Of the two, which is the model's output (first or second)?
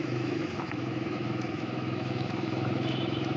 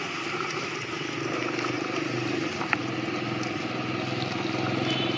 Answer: first